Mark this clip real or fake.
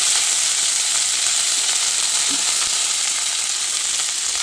real